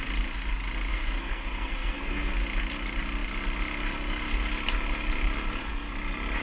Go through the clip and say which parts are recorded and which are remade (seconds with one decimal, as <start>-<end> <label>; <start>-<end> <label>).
0.0-0.9 recorded; 0.9-2.3 remade; 2.3-6.4 recorded